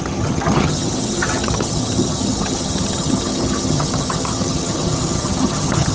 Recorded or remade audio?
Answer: remade